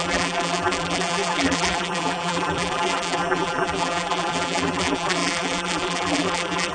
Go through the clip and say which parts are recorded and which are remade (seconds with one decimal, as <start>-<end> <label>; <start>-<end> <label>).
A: 0.0-6.7 remade